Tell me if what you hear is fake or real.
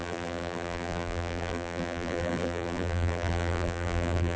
fake